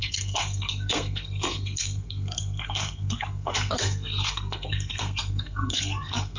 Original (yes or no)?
no